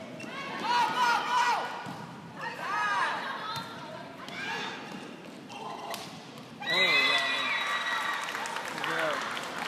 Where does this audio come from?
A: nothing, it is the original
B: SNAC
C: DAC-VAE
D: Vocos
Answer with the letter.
A